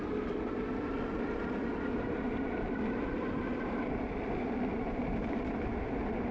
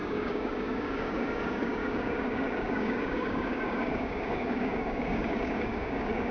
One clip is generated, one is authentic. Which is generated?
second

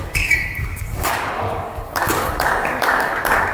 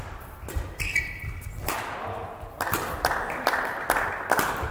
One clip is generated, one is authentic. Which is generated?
first